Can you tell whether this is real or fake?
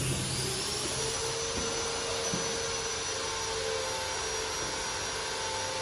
real